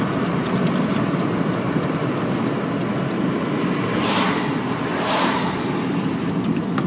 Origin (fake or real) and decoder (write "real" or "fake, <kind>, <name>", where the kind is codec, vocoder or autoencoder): real